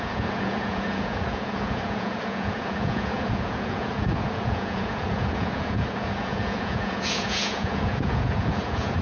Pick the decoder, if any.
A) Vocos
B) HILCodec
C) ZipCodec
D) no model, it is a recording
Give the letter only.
A